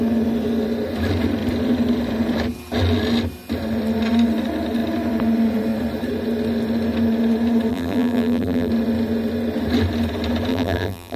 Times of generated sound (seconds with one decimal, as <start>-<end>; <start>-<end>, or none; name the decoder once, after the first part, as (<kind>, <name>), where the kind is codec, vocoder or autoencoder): 7.7-8.7 (vocoder, BigVGAN v2); 10.5-11.2